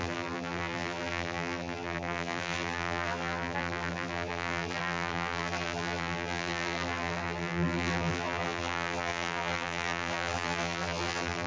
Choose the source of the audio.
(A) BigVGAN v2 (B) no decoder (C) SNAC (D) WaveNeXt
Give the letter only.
A